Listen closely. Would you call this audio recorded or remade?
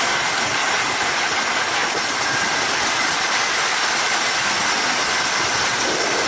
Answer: recorded